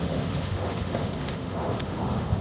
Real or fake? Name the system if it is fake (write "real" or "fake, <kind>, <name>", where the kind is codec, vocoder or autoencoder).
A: fake, autoencoder, DAC-VAE